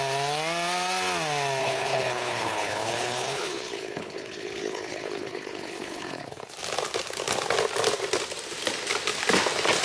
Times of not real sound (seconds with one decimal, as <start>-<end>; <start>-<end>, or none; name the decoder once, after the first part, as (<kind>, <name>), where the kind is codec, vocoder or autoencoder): 1.6-6.5 (codec, HILCodec)